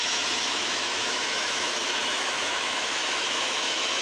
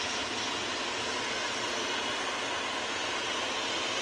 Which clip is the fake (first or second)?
first